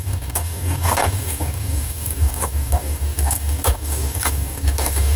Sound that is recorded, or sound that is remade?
remade